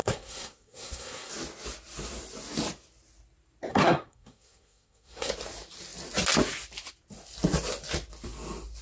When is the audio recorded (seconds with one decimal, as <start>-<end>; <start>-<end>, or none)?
1.3-3.7; 5.3-8.8